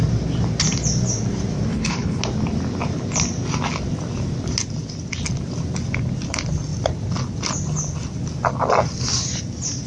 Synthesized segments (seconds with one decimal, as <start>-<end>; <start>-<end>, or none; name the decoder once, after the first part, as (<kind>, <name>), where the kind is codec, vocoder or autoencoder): 1.7-2.2 (codec, HILCodec)